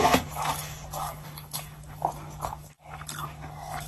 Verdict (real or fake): fake